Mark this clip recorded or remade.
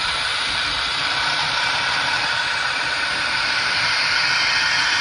recorded